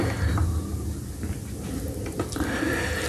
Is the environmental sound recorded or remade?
recorded